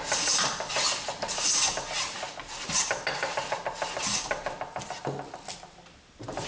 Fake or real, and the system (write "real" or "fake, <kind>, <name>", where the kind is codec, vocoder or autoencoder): real